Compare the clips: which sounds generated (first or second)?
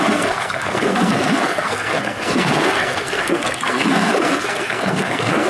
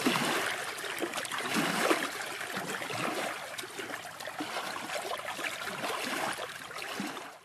first